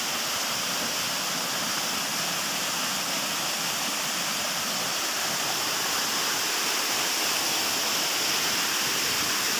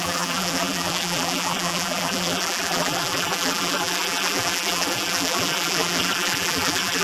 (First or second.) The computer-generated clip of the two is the second